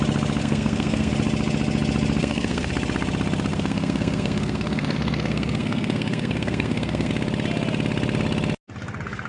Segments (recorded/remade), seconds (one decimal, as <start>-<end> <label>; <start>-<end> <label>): 0.0-0.4 recorded; 0.4-1.1 remade; 1.1-2.2 recorded; 2.2-2.7 remade; 2.7-3.5 recorded; 3.5-7.1 remade; 7.1-9.3 recorded